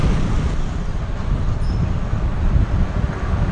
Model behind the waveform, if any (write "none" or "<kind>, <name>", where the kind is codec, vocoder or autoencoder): none